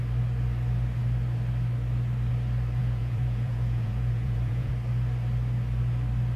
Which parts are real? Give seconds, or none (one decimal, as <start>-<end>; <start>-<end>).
0.0-2.8; 4.7-6.4